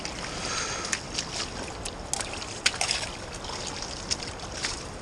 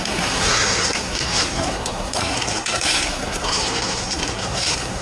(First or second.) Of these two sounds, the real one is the first